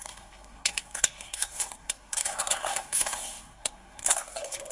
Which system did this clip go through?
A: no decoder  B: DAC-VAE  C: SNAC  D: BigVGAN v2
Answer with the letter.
C